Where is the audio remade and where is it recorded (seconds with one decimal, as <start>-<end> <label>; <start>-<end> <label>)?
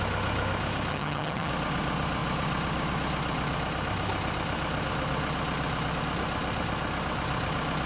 0.0-0.9 recorded; 0.9-1.5 remade; 1.5-7.8 recorded